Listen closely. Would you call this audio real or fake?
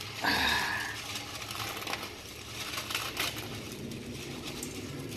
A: real